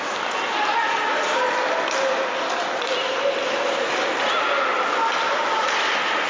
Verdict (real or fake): real